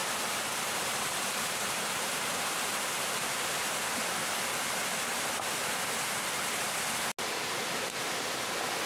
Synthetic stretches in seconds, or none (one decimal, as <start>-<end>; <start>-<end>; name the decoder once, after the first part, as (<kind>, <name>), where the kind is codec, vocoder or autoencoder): 0.0-3.5 (vocoder, BigVGAN v2)